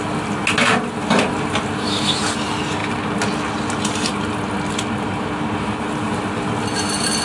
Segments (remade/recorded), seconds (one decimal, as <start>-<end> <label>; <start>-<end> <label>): 0.0-7.2 recorded